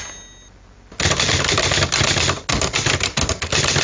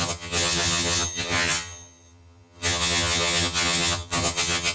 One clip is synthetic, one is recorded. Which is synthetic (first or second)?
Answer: second